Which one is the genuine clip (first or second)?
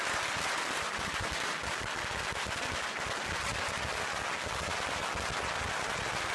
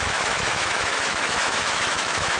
first